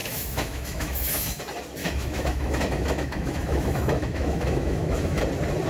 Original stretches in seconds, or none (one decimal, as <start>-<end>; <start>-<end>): 1.4-1.8; 5.2-5.7